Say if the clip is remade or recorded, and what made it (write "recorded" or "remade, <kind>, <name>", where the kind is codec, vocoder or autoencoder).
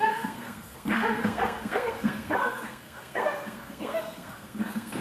remade, codec, SNAC